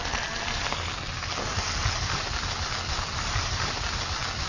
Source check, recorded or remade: recorded